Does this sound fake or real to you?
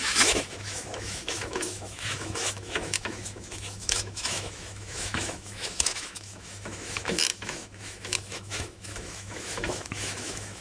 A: fake